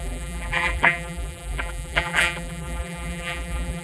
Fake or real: fake